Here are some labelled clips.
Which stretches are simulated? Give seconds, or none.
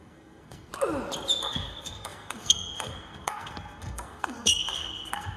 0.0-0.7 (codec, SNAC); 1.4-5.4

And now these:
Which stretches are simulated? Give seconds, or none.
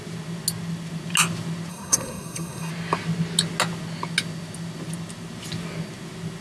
1.7-2.7 (codec, SNAC)